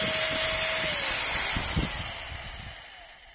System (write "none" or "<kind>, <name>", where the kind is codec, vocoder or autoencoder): none